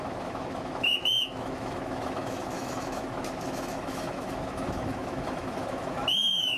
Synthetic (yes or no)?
yes